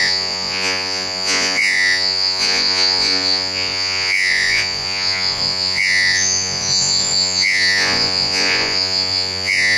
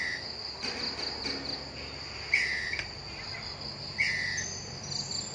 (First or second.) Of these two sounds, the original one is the second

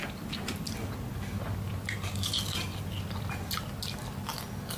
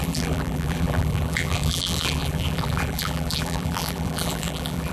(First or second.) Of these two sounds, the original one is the first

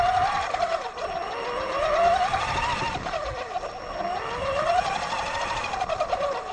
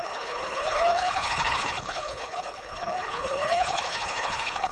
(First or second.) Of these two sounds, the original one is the first